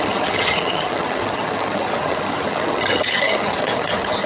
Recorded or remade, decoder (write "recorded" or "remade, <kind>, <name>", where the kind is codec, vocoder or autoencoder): remade, vocoder, HiFi-GAN